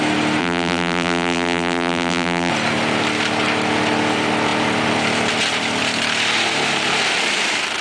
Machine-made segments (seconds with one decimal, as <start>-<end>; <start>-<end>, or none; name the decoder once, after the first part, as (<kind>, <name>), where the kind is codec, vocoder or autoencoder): 0.4-2.5 (vocoder, BigVGAN v2)